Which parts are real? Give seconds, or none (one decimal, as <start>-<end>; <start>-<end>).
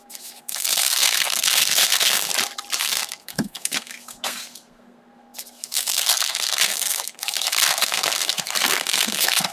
2.3-2.8